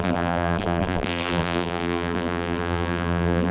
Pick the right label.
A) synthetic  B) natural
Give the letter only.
A